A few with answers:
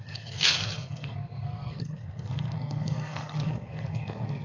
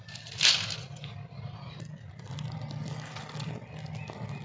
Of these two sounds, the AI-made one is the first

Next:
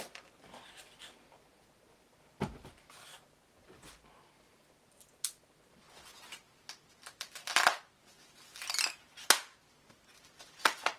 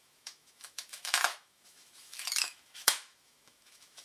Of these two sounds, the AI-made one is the second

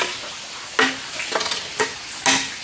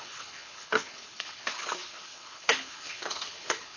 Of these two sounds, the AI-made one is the second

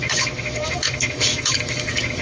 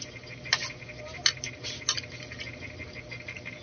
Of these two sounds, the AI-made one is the first